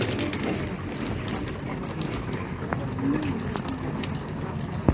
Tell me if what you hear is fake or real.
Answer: real